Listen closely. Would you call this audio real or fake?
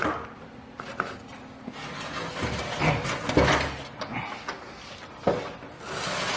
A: real